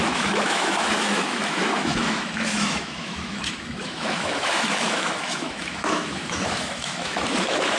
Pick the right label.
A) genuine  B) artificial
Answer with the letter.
B